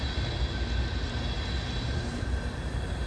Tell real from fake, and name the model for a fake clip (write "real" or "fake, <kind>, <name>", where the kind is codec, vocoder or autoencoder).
real